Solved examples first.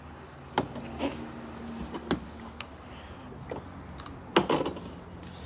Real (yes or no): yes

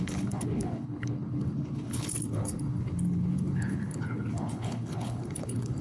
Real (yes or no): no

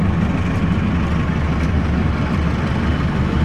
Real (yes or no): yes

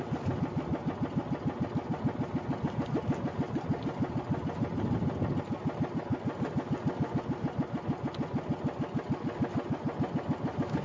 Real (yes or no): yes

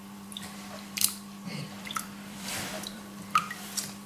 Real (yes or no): no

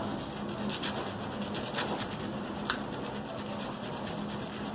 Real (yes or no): yes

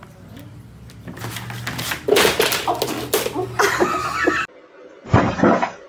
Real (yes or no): yes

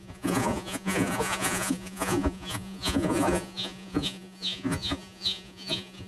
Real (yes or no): no